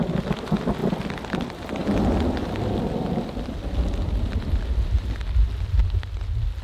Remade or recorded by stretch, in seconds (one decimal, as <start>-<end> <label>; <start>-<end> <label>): 0.0-6.6 recorded